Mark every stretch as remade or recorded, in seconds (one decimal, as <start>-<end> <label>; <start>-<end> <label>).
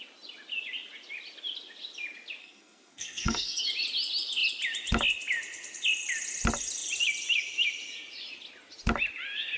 0.0-2.4 recorded; 2.4-3.6 remade; 3.6-9.6 recorded